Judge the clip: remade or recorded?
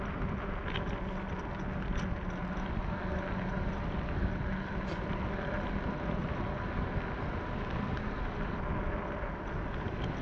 recorded